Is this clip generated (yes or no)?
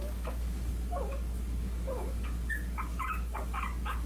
yes